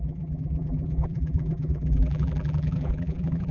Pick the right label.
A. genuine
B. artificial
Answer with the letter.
B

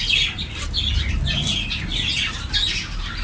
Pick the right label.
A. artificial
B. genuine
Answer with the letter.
B